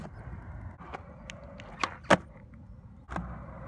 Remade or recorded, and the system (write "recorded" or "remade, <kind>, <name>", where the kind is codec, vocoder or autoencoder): recorded